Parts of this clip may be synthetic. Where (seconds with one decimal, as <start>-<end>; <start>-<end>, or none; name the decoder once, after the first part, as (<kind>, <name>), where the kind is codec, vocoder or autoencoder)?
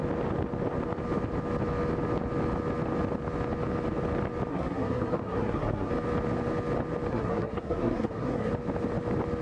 4.5-5.9 (codec, SNAC); 7.1-8.5